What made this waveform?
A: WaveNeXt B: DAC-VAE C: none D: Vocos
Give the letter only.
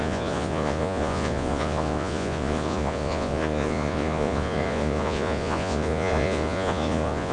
D